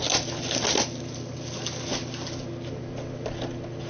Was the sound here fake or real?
real